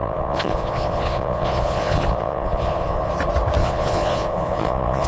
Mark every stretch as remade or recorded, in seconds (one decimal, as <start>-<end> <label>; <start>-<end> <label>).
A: 0.0-3.1 remade; 3.1-3.6 recorded; 3.6-5.1 remade